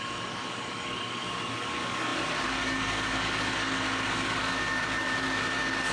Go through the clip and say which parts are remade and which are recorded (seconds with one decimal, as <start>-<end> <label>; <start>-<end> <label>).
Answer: 0.0-5.9 remade